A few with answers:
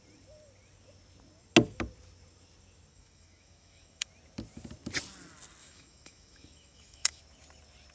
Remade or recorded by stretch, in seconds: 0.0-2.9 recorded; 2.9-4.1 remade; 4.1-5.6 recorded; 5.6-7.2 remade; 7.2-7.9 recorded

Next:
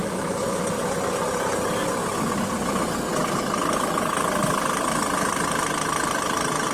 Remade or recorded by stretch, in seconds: 0.0-0.6 remade; 0.6-6.7 recorded

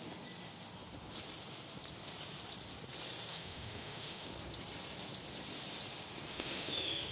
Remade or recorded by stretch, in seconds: 0.0-3.3 recorded; 3.3-4.3 remade; 4.3-6.3 recorded; 6.3-7.1 remade

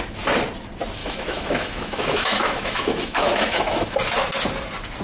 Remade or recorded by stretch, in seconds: 0.0-1.0 recorded; 1.0-4.0 remade; 4.0-5.0 recorded

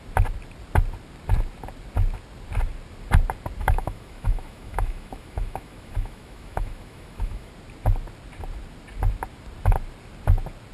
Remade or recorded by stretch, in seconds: 0.0-3.6 recorded; 3.6-7.5 remade; 7.5-10.7 recorded